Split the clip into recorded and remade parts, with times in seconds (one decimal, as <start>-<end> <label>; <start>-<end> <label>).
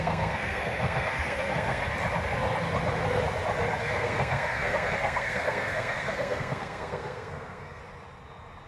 0.0-1.8 remade; 1.8-3.8 recorded; 3.8-7.8 remade; 7.8-8.7 recorded